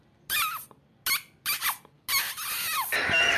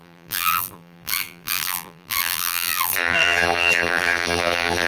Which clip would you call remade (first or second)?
second